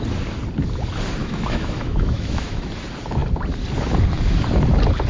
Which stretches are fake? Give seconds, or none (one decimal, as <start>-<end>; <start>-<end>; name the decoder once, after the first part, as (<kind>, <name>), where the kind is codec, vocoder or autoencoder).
1.2-2.7 (autoencoder, DAC-VAE)